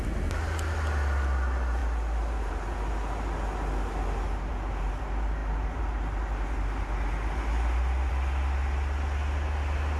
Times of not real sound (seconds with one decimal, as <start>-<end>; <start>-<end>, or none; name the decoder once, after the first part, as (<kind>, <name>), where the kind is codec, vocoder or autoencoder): none